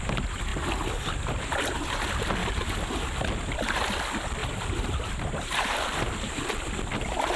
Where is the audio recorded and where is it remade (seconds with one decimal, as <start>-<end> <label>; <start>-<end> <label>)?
0.0-2.4 recorded; 2.4-3.2 remade; 3.2-4.4 recorded; 4.4-5.8 remade; 5.8-7.4 recorded